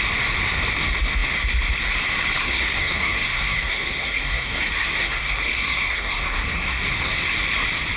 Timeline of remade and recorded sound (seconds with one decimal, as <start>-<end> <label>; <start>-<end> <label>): 0.0-2.4 recorded; 2.4-6.8 remade; 6.8-8.0 recorded